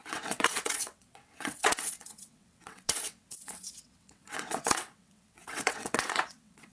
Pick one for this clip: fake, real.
fake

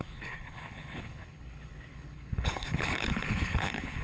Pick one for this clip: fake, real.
fake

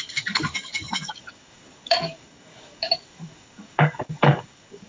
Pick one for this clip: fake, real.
fake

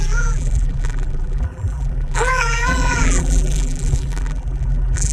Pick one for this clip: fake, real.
fake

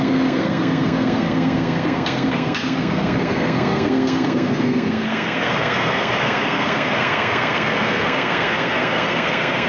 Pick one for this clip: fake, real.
fake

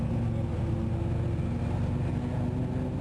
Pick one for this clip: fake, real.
real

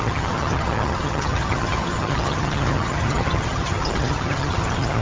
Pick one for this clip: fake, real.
fake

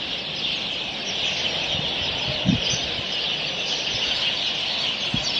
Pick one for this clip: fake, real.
real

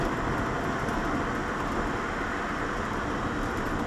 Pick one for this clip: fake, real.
real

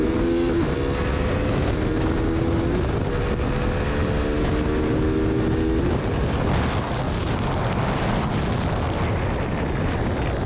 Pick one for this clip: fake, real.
real